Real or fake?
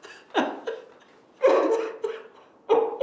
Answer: real